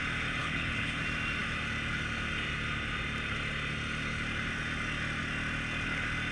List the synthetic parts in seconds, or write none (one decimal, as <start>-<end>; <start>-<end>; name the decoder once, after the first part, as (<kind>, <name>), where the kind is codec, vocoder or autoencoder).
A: 0.4-1.0 (codec, HILCodec)